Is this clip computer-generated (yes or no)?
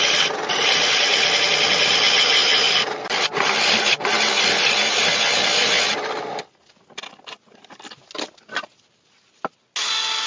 no